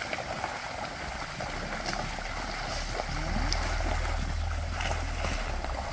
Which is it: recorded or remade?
recorded